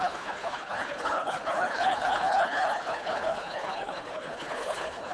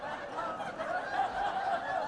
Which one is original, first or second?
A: second